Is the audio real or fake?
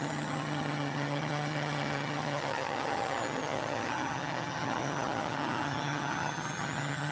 fake